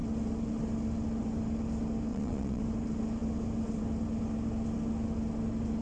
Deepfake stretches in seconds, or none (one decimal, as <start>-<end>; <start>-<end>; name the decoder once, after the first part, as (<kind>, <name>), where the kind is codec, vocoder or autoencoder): 2.1-2.6 (vocoder, Vocos)